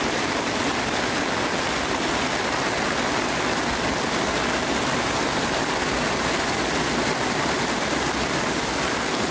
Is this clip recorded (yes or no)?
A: yes